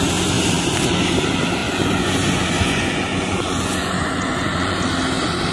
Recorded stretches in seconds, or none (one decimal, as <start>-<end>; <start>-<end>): 0.0-1.6; 4.9-5.5

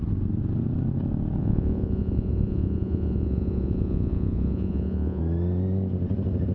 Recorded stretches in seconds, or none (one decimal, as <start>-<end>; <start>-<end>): 0.0-1.4; 5.2-6.5

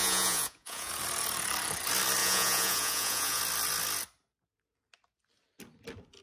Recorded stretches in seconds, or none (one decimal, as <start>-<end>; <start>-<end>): 0.9-2.2; 3.4-6.2

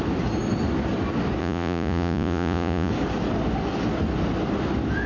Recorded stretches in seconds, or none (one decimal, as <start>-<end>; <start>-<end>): 0.0-1.4; 2.9-5.1

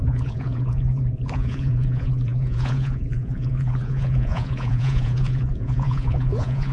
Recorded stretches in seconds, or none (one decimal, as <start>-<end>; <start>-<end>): none

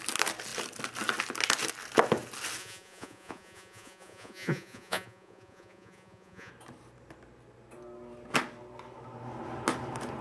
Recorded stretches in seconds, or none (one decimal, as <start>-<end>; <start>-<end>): 0.0-2.6; 6.5-10.2